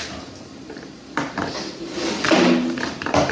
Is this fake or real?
real